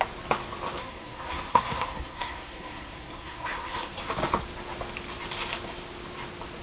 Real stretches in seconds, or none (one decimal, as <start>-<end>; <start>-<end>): 0.0-0.8; 4.1-6.6